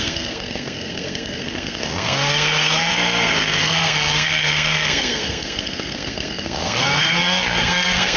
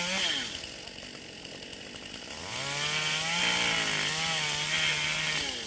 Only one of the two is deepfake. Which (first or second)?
first